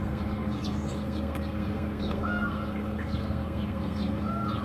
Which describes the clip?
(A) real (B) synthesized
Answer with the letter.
B